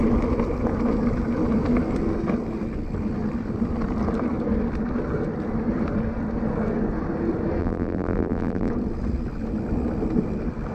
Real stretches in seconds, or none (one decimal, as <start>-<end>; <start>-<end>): 0.0-7.6; 8.7-10.7